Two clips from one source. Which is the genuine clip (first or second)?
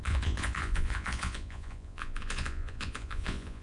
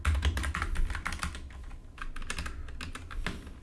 second